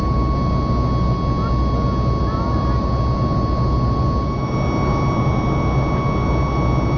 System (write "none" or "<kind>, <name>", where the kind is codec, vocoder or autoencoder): none